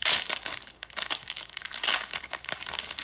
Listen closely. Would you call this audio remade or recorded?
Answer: remade